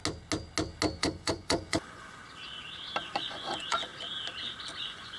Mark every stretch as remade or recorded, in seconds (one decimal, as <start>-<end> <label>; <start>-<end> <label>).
0.0-1.0 recorded; 1.0-2.2 remade; 2.2-3.0 recorded; 3.0-3.9 remade; 3.9-4.8 recorded; 4.8-5.2 remade